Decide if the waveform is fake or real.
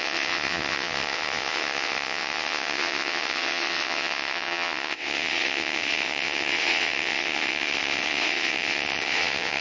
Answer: fake